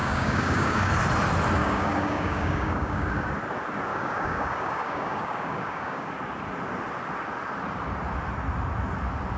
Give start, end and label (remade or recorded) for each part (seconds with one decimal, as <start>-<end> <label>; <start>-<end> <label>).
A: 0.0-0.9 remade; 0.9-1.6 recorded; 1.6-3.3 remade; 3.3-3.9 recorded; 3.9-6.1 remade; 6.1-9.4 recorded